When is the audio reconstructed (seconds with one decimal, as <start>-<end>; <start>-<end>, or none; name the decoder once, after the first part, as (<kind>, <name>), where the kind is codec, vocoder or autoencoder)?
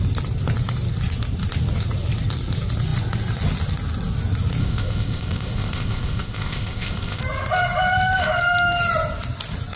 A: 4.6-7.2 (codec, ZipCodec)